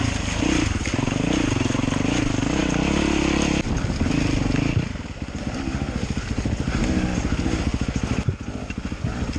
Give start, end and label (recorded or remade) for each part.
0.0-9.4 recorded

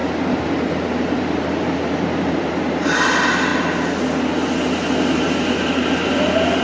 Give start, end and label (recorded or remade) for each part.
0.0-3.1 remade; 3.1-6.6 recorded

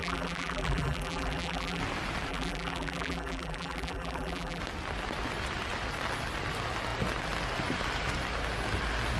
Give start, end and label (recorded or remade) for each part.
0.0-1.8 remade; 1.8-2.3 recorded; 2.3-4.6 remade; 4.6-9.2 recorded

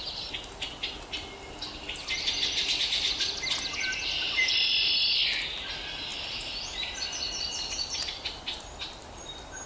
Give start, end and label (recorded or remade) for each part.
0.0-9.7 recorded